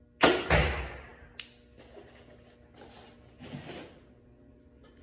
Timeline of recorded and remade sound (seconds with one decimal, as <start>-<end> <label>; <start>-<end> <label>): 0.0-5.0 recorded

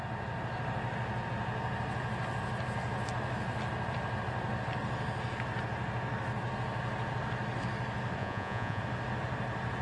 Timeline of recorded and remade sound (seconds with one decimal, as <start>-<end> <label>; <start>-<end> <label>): 0.0-8.2 recorded; 8.2-8.8 remade; 8.8-9.8 recorded

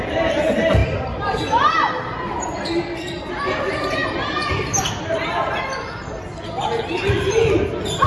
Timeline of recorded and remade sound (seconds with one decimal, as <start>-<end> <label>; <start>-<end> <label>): 0.0-8.1 recorded

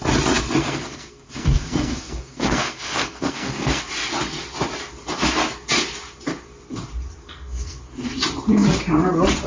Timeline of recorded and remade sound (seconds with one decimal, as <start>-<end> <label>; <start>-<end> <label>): 0.0-0.6 recorded; 0.6-3.8 remade; 3.8-7.2 recorded; 7.2-7.8 remade; 7.8-9.5 recorded

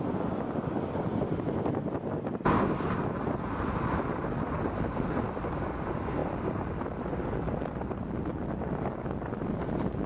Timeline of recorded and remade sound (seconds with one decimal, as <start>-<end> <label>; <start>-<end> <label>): 0.0-10.1 recorded